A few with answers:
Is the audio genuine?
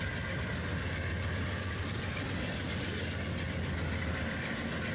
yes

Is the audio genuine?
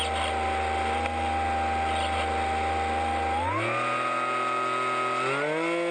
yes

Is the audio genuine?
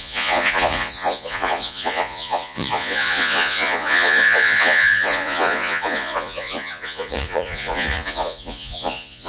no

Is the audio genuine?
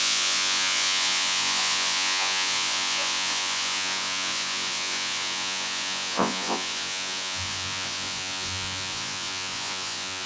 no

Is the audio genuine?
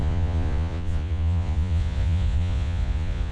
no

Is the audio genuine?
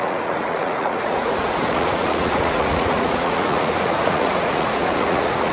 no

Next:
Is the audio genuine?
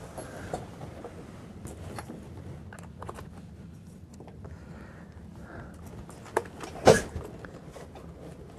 yes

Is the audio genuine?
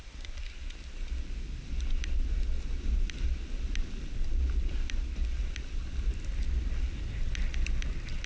yes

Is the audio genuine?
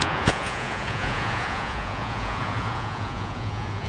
no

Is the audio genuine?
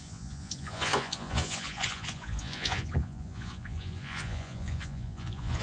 no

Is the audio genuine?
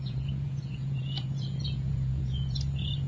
no